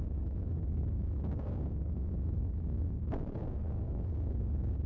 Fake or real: fake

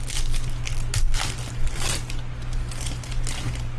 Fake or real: real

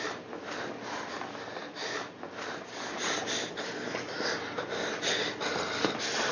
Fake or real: real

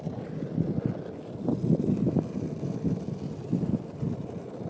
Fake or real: real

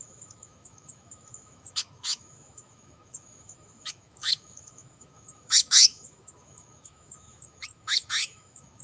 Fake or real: fake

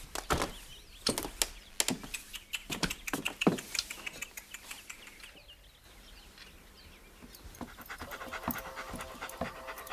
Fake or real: real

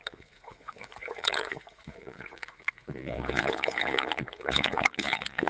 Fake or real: fake